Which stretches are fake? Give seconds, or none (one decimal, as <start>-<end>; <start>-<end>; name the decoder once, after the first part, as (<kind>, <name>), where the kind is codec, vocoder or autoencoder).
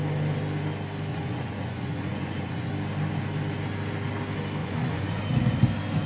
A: 1.1-2.7 (vocoder, Vocos); 4.6-5.2